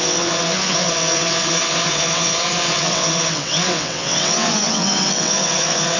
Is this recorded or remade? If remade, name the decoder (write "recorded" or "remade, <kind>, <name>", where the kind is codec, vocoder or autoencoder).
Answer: remade, vocoder, WaveNeXt